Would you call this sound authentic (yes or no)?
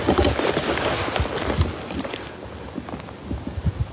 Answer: yes